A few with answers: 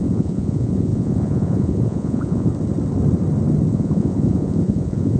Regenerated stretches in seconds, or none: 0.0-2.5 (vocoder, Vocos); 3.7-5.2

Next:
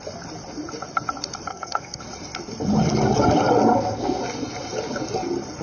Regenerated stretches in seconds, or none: 1.5-2.0 (codec, SNAC); 3.7-4.2

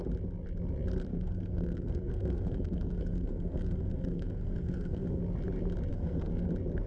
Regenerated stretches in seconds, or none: 1.1-5.2 (codec, SNAC); 5.9-6.5

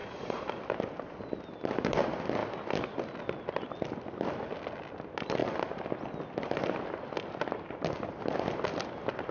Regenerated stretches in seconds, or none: 0.0-0.6 (vocoder, Vocos)

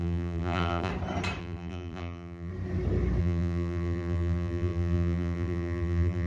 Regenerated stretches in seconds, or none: 0.0-0.9 (vocoder, BigVGAN v2); 1.4-2.5; 3.2-6.3

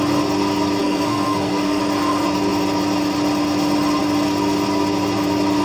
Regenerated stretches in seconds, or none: 0.8-1.8 (codec, SNAC)